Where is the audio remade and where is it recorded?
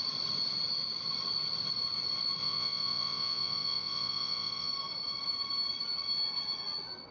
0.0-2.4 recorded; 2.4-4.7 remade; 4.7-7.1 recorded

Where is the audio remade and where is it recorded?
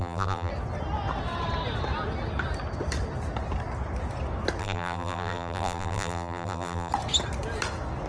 0.0-0.5 remade; 0.5-4.6 recorded; 4.6-6.9 remade; 6.9-8.1 recorded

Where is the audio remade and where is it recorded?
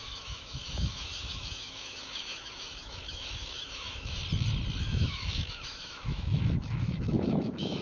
0.0-4.2 remade; 4.2-4.8 recorded; 4.8-7.8 remade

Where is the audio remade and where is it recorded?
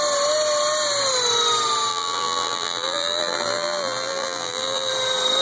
0.0-1.9 recorded; 1.9-4.9 remade; 4.9-5.4 recorded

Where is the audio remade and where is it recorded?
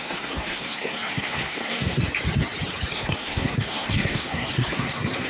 0.0-2.0 remade; 2.0-2.9 recorded; 2.9-5.3 remade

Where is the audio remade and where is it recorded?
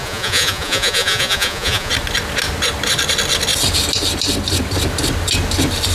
0.0-1.9 remade; 1.9-5.9 recorded